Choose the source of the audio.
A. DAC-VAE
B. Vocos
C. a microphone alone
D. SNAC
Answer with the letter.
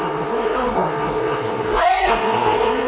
D